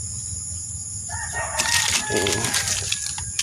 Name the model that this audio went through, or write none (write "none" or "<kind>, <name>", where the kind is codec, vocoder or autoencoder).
none